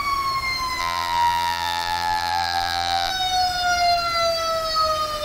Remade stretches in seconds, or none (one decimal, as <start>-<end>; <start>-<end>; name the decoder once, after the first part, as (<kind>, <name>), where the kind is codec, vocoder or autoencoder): 0.8-3.1 (vocoder, BigVGAN v2)

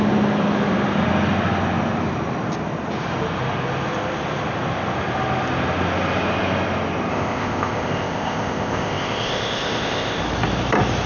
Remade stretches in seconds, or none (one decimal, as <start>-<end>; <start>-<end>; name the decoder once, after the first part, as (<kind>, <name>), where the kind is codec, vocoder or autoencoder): 7.1-10.2 (codec, ZipCodec)